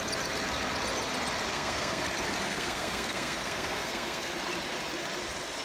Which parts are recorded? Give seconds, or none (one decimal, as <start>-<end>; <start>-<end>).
0.0-1.5; 2.0-2.5; 4.3-5.6